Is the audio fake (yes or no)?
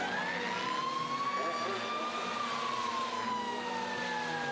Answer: no